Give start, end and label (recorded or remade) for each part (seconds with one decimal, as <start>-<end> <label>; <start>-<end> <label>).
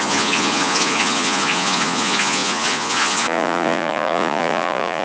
0.0-5.0 remade